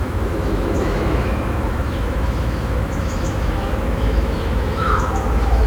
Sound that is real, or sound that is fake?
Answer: fake